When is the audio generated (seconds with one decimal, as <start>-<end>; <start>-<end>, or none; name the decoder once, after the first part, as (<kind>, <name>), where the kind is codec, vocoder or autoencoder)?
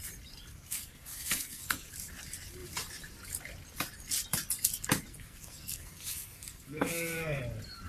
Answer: 0.5-1.9 (codec, SNAC); 5.1-7.4